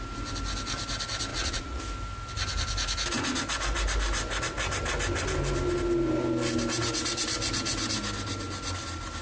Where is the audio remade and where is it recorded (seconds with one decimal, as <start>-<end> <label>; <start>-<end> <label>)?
0.0-1.3 recorded; 1.3-1.8 remade; 1.8-9.2 recorded